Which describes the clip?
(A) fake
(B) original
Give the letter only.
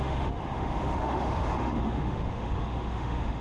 A